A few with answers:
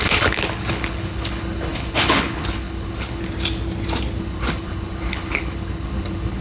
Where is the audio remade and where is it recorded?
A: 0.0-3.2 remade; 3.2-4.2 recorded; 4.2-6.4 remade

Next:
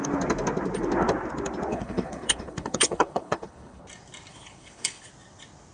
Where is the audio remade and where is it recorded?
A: 0.0-1.7 recorded; 1.7-3.8 remade; 3.8-4.3 recorded; 4.3-5.1 remade; 5.1-5.7 recorded